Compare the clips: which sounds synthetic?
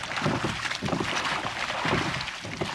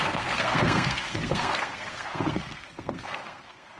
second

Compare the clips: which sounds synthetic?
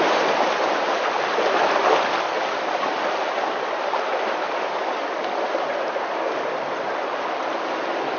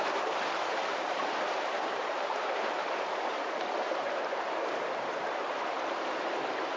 second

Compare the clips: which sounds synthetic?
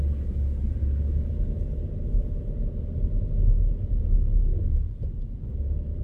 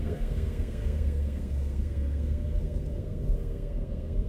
second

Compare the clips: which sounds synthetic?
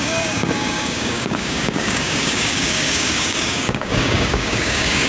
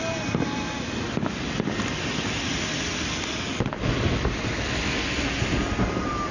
first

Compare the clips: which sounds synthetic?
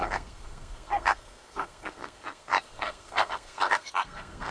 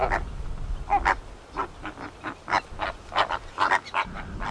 first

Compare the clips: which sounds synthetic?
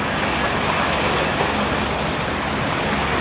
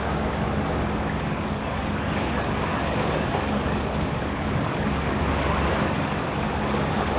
second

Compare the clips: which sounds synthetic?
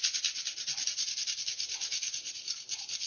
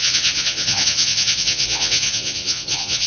second